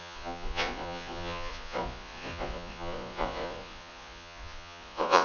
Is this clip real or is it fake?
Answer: fake